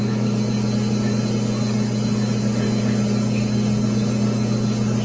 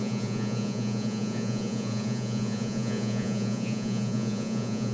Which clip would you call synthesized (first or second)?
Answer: second